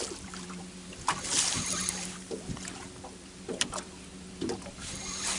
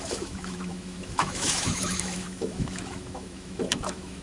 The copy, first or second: second